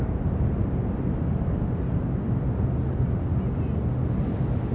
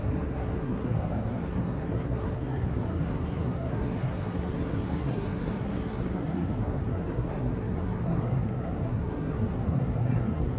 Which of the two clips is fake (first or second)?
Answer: second